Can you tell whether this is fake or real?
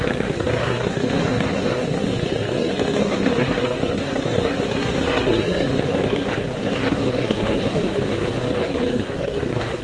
fake